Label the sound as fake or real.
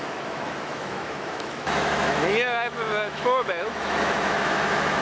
fake